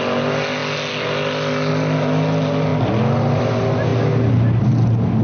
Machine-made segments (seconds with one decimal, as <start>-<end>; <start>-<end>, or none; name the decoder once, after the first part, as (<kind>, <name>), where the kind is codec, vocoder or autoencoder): none